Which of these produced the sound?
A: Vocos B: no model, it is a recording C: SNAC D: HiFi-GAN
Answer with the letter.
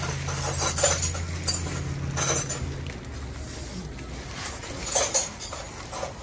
B